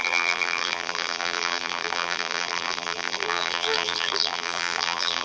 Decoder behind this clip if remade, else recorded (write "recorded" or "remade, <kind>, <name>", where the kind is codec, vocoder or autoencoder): remade, vocoder, BigVGAN v2